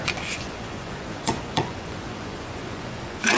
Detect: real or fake fake